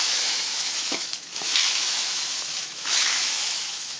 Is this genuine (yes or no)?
no